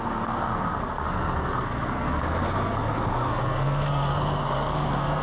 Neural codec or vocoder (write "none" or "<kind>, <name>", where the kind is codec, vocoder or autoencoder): codec, SNAC